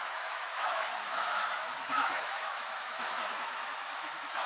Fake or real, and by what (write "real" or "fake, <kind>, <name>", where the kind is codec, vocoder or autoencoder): fake, autoencoder, DAC-VAE